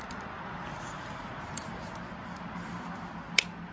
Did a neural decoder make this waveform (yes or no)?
no